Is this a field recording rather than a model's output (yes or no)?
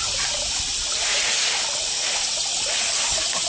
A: yes